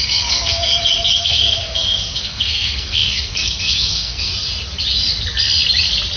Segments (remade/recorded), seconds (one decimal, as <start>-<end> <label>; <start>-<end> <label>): 0.0-0.7 remade; 0.7-1.2 recorded; 1.2-4.3 remade; 4.3-6.2 recorded